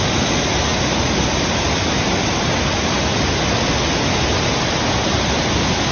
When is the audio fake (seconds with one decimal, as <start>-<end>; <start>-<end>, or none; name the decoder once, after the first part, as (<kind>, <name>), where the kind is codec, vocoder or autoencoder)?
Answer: none